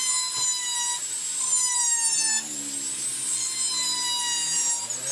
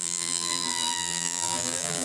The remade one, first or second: second